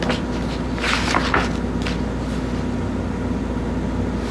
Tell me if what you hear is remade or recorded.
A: recorded